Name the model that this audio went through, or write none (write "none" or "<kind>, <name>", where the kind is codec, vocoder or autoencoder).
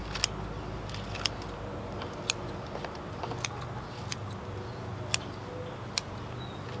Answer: none